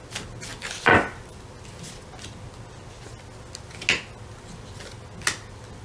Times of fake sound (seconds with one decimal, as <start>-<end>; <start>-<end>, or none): none